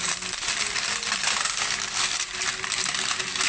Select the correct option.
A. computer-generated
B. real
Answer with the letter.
B